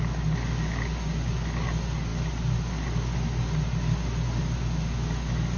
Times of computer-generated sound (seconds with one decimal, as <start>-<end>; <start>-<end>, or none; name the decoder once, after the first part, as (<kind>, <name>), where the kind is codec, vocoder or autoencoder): none